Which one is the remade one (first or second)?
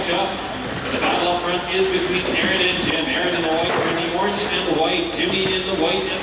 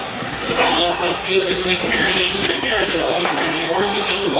second